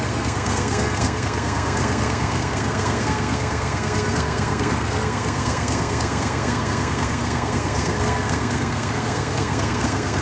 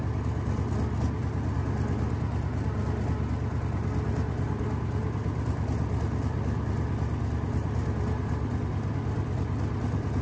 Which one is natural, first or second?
second